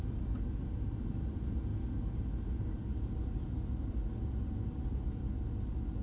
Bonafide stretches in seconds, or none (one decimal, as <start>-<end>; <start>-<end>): 0.0-6.0